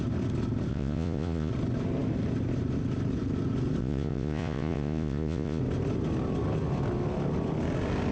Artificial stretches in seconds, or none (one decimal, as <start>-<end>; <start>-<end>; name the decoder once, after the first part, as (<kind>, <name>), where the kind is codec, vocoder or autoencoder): 0.7-1.5 (vocoder, Vocos); 3.8-5.6